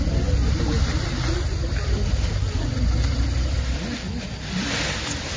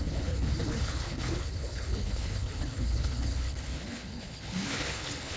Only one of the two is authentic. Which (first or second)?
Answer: first